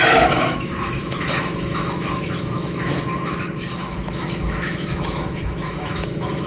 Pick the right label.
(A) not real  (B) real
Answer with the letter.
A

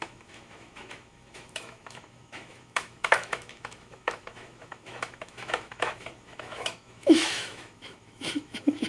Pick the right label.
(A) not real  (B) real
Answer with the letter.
A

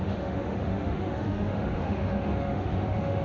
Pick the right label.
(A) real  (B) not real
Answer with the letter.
B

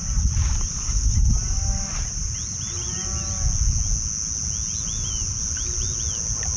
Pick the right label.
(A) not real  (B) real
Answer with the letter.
B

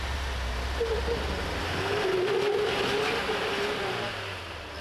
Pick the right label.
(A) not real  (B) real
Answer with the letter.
B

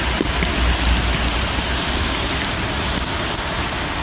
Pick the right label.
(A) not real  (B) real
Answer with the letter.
B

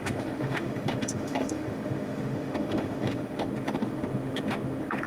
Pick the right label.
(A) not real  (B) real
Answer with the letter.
A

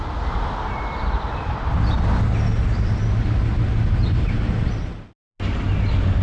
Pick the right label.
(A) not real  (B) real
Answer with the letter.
B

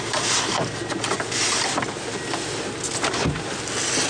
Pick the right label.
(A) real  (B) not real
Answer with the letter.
A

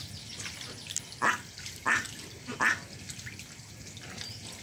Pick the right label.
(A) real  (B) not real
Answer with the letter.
A